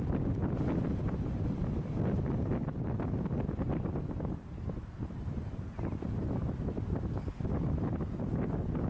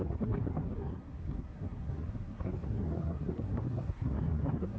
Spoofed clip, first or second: second